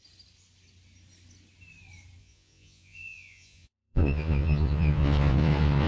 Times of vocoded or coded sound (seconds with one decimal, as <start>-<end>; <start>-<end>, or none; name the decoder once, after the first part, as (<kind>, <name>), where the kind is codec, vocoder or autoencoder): 2.2-5.9 (vocoder, Vocos)